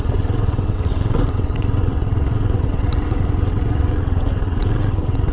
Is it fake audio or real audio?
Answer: fake